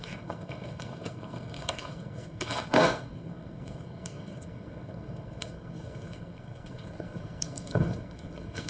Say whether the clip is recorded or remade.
remade